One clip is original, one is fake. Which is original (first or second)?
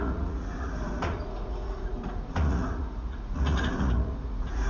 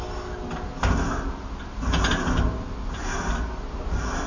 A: second